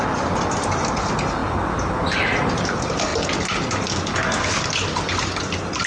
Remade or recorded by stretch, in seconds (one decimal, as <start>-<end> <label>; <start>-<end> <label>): 0.0-5.9 recorded